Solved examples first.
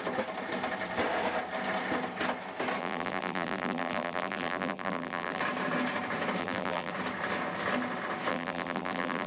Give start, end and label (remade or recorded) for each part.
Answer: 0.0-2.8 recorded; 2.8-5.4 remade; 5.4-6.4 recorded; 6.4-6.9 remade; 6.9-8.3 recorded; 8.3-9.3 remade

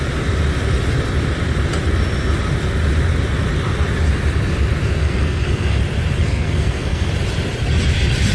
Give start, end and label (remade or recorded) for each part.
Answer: 0.0-5.0 recorded; 5.0-5.8 remade; 5.8-6.2 recorded; 6.2-7.1 remade; 7.1-8.3 recorded

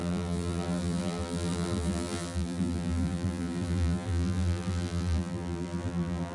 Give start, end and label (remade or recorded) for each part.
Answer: 0.0-6.3 remade

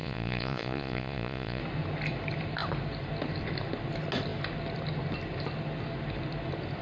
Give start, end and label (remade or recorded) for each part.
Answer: 0.0-1.6 remade; 1.6-6.8 recorded